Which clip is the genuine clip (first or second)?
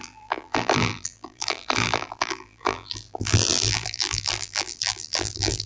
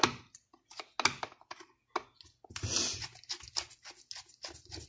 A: second